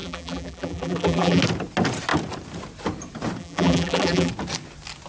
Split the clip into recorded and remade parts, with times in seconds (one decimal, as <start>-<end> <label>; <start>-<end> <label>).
0.0-1.4 remade; 1.4-3.4 recorded; 3.4-4.3 remade; 4.3-5.1 recorded